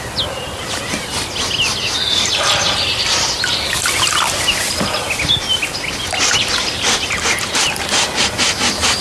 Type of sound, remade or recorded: recorded